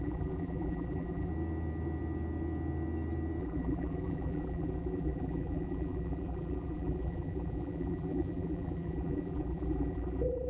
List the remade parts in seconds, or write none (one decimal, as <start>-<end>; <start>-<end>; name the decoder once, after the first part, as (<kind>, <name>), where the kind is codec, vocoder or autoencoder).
0.0-1.3 (vocoder, BigVGAN v2); 3.4-10.5